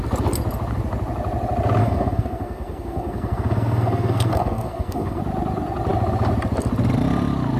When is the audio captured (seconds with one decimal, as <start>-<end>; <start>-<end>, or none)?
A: 0.0-1.8; 5.2-7.6